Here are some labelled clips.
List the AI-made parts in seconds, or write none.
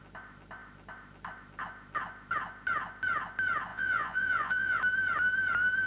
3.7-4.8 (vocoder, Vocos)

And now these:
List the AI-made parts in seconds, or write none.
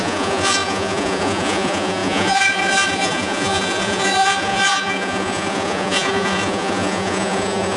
0.0-7.8 (vocoder, Vocos)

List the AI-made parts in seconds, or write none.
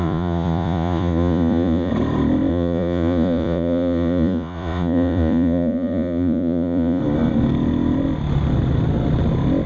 0.0-1.9 (vocoder, Vocos); 2.5-7.0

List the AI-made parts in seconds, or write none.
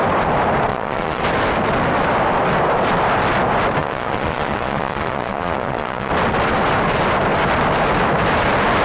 0.7-1.2 (vocoder, Vocos); 3.8-6.1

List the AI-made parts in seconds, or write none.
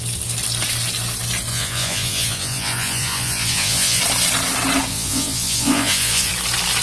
1.5-4.0 (vocoder, Vocos); 4.9-6.3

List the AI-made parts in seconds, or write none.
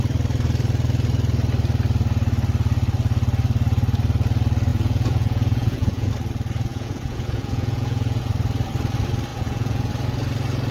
4.7-6.1 (vocoder, Vocos); 6.7-8.3; 9.3-9.9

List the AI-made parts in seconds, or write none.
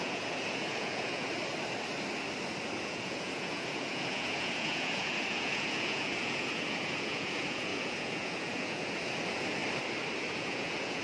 0.0-1.4 (vocoder, Vocos); 2.8-9.6; 10.3-11.0